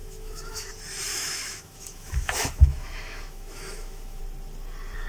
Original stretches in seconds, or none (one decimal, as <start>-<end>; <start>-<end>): 0.7-1.1; 4.2-5.1